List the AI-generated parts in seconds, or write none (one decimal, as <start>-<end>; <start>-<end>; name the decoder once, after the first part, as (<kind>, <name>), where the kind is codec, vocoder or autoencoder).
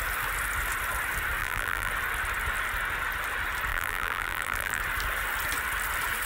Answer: 1.4-1.9 (vocoder, BigVGAN v2); 3.7-4.8